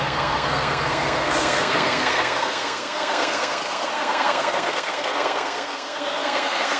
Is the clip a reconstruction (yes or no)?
yes